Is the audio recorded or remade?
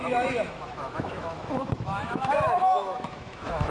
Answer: remade